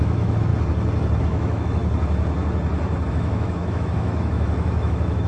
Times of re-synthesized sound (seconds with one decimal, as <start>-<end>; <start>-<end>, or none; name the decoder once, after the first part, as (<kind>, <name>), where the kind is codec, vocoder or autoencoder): 0.0-0.5 (autoencoder, DAC-VAE); 1.2-1.8; 3.1-5.3